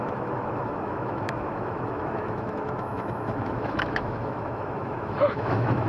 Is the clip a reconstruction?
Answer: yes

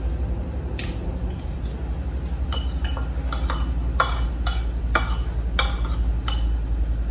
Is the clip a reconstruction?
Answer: no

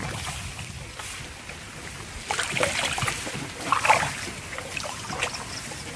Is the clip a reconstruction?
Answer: no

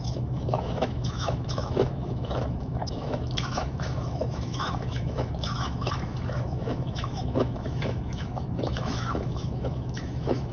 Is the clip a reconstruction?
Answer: yes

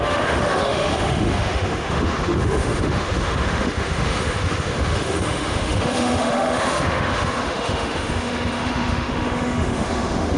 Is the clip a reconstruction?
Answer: yes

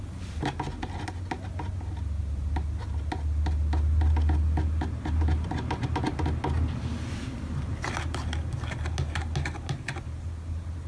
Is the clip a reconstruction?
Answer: no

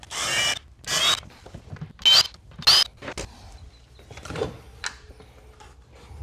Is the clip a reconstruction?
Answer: no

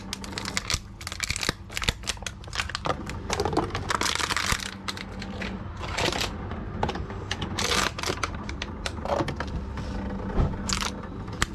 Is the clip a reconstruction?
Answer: no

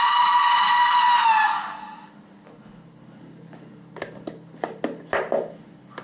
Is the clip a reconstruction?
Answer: no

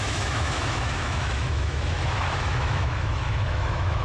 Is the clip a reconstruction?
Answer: yes